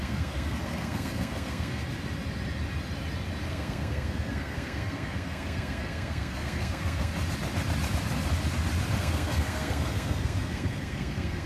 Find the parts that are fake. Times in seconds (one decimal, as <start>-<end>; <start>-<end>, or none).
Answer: 0.0-1.8; 3.5-7.1; 9.0-11.5